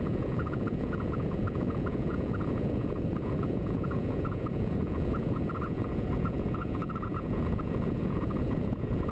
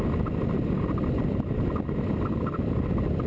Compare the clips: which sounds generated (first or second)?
first